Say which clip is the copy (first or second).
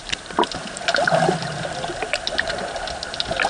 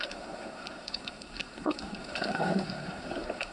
second